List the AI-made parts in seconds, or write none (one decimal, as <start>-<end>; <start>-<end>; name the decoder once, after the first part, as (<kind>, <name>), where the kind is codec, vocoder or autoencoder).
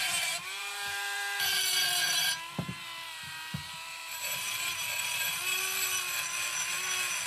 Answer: 0.0-5.4 (vocoder, BigVGAN v2)